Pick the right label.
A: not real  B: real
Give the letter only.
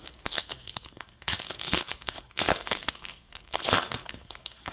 A